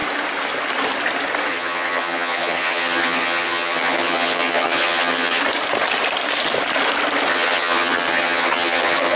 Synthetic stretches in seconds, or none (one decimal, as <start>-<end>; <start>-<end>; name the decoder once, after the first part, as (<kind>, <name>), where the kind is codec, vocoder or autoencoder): 1.5-5.4 (vocoder, HiFi-GAN); 7.3-9.2